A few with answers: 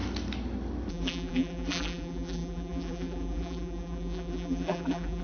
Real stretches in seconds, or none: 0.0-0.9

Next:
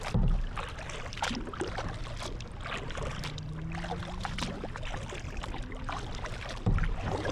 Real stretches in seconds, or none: 0.0-4.0; 5.6-7.3

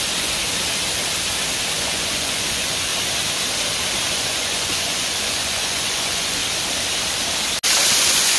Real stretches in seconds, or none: 0.4-1.7; 2.9-4.1; 6.4-8.0

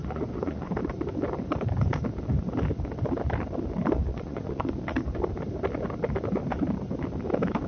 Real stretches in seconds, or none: 0.7-4.1; 4.7-7.7

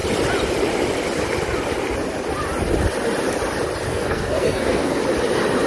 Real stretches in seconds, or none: 0.0-3.9; 5.0-5.7

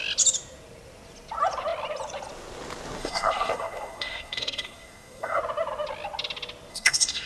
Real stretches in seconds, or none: 0.0-3.0; 5.4-6.7

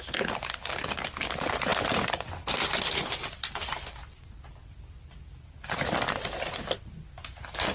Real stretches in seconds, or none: 0.0-7.7